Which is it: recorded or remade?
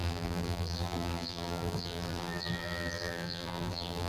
remade